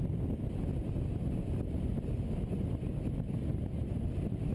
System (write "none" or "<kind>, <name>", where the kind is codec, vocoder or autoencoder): none